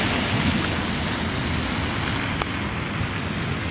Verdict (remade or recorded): recorded